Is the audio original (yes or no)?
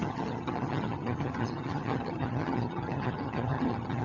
no